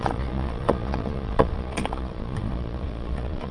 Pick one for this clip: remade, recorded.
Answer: remade